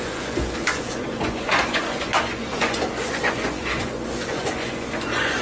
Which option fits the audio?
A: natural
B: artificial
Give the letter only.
B